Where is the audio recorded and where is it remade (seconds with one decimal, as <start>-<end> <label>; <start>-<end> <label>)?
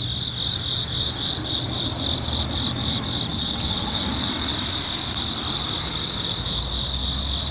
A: 0.0-3.3 recorded; 3.3-4.0 remade; 4.0-7.5 recorded